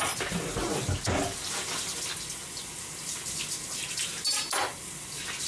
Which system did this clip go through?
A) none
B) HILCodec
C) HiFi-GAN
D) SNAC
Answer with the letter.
A